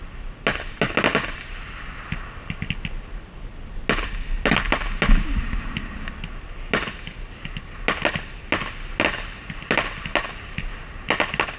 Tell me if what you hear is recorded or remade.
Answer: recorded